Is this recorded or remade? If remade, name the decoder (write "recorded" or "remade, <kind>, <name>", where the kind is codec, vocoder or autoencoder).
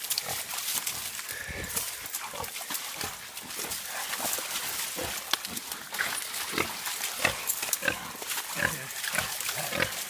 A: recorded